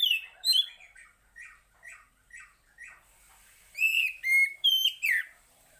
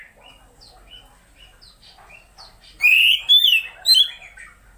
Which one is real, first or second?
second